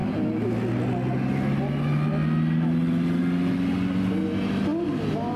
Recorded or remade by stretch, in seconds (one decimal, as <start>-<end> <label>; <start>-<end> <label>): 0.0-5.4 recorded